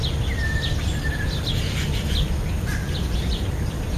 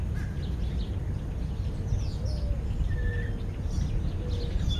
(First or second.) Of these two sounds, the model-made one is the first